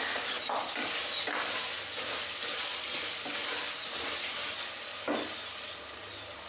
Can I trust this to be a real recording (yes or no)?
yes